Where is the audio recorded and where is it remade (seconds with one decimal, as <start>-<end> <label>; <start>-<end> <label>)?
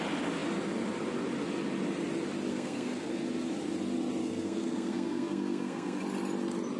0.0-2.5 recorded; 2.5-3.1 remade; 3.1-4.2 recorded; 4.2-6.0 remade; 6.0-6.8 recorded